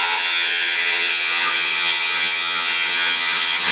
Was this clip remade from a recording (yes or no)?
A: yes